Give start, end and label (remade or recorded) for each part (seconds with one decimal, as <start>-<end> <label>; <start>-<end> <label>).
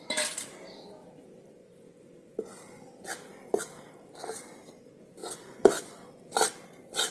0.0-5.2 recorded; 5.2-5.8 remade; 5.8-7.1 recorded